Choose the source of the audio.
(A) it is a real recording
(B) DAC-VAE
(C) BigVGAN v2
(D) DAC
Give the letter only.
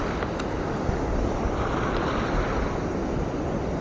A